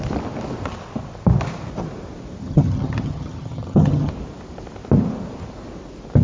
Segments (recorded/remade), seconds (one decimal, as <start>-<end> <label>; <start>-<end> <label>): 0.0-2.4 recorded; 2.4-4.1 remade; 4.1-6.2 recorded